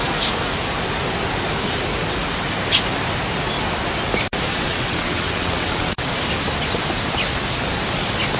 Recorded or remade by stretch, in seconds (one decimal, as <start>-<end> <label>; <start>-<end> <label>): 0.0-4.5 recorded; 4.5-6.0 remade; 6.0-8.4 recorded